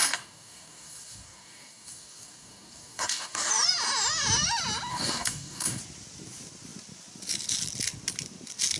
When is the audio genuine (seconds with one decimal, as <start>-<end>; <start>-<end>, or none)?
3.5-4.9; 5.8-8.8